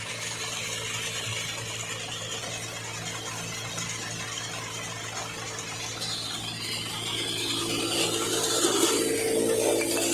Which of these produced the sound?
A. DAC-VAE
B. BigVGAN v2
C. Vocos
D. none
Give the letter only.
D